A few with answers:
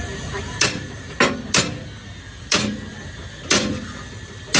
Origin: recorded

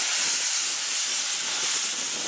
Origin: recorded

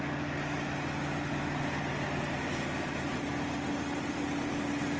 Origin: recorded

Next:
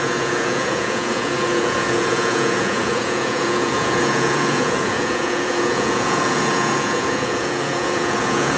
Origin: remade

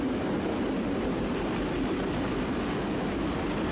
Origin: recorded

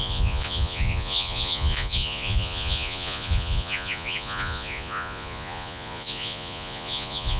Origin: remade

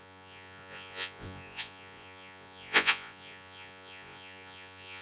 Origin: remade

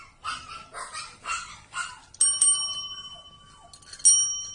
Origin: recorded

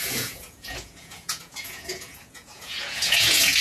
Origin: remade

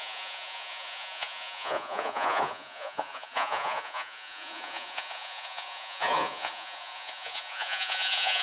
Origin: remade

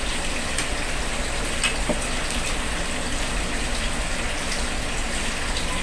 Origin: recorded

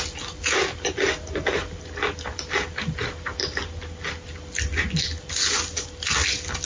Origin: recorded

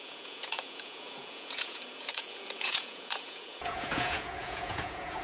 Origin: remade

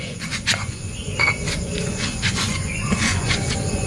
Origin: remade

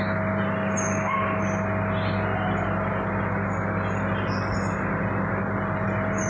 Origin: recorded